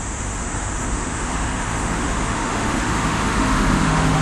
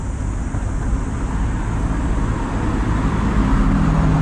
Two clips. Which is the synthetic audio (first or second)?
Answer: first